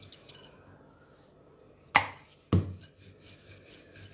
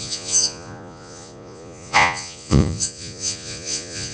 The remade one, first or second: second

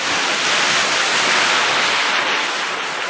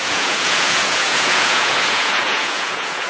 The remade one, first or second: second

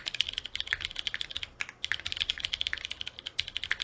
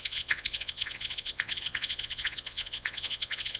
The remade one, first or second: second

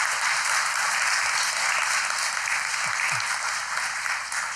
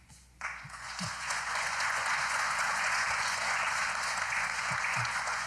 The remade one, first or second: second